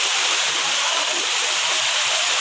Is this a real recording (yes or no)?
no